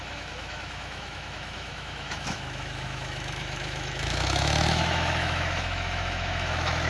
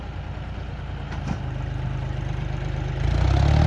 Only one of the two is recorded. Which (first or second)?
second